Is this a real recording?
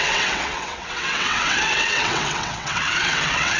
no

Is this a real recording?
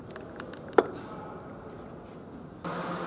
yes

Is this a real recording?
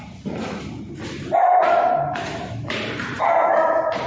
no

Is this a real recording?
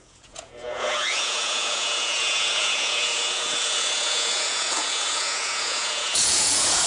no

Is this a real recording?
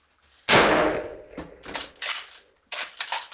yes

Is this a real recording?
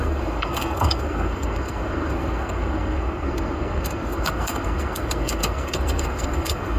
no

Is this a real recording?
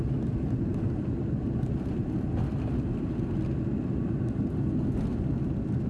yes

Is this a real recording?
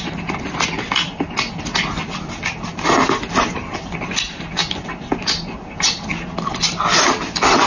yes